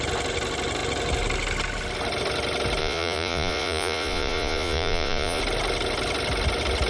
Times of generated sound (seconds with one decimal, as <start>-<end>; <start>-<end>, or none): 2.8-5.4